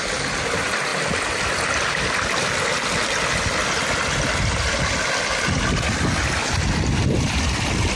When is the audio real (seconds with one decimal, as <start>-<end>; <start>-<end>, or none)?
0.0-8.0